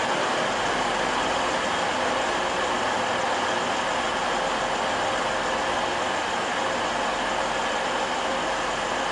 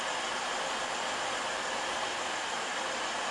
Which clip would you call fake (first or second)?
second